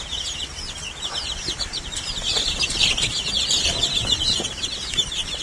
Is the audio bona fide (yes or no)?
yes